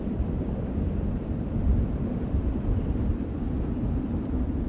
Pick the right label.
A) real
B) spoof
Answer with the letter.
B